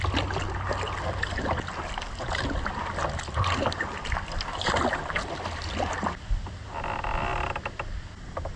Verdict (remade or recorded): recorded